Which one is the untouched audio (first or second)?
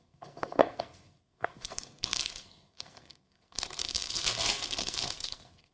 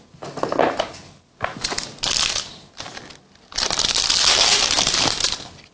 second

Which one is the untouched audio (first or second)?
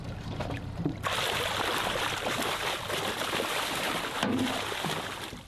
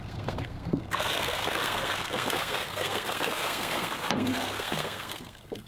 first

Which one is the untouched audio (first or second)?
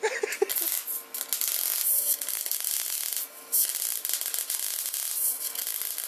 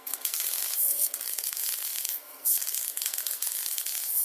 first